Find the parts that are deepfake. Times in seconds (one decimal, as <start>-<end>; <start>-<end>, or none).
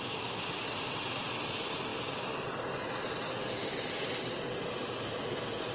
none